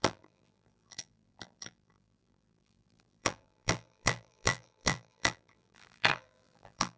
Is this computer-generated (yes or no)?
yes